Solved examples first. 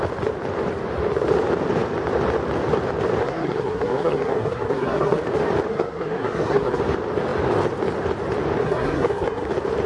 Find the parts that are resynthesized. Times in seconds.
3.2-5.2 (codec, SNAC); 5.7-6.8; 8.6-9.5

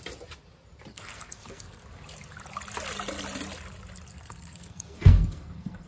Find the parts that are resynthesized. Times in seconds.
0.9-1.8 (codec, SNAC); 4.1-5.9